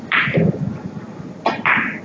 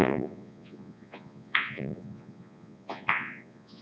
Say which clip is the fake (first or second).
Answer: second